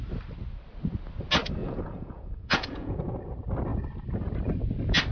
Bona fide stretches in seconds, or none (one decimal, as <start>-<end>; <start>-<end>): 0.0-1.6; 3.1-5.1